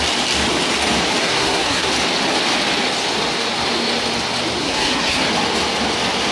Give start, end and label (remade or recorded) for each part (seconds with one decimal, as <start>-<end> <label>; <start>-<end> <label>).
0.0-1.2 recorded; 1.2-1.9 remade; 1.9-4.6 recorded; 4.6-5.2 remade; 5.2-6.3 recorded